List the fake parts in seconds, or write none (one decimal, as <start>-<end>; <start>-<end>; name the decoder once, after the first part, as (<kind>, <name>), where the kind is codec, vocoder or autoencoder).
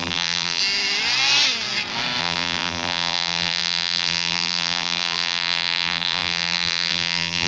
0.0-0.6 (vocoder, BigVGAN v2); 2.2-7.5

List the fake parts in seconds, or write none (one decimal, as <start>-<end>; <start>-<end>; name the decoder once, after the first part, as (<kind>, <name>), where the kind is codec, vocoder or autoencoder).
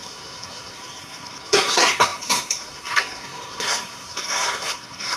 0.0-5.2 (codec, SNAC)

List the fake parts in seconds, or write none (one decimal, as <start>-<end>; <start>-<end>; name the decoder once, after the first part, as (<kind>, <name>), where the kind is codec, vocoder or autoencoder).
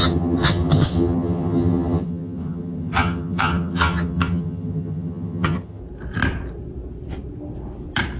0.0-5.8 (vocoder, HiFi-GAN)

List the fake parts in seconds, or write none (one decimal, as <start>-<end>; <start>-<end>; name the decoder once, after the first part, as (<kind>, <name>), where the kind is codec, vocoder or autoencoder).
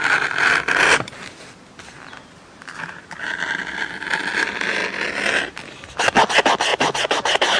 6.7-7.6 (vocoder, BigVGAN v2)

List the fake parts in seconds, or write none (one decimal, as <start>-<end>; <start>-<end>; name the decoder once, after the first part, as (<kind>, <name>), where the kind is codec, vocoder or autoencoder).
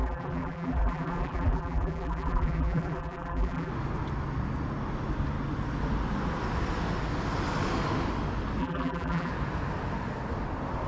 0.0-3.7 (vocoder, BigVGAN v2); 8.6-9.3